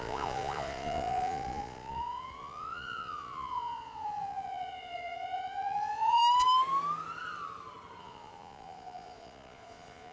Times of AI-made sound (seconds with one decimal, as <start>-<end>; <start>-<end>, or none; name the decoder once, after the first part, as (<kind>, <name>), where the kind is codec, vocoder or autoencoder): 0.0-6.2 (vocoder, Vocos); 8.0-10.1